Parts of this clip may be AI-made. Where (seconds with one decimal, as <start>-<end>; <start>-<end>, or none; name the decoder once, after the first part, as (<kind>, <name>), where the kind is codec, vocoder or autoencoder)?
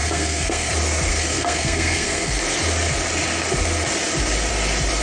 0.0-0.7 (codec, SNAC); 1.1-2.4